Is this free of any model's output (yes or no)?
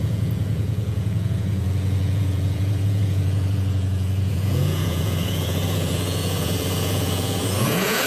no